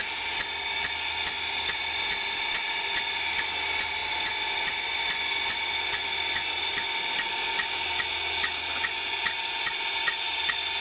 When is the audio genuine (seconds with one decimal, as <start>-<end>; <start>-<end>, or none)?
0.0-10.8